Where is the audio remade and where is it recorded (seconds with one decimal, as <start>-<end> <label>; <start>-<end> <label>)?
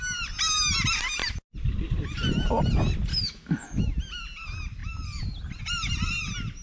0.0-3.1 recorded; 3.1-3.9 remade; 3.9-6.6 recorded